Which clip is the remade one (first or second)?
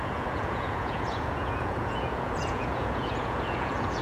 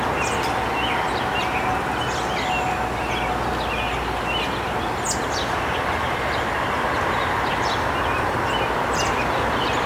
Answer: first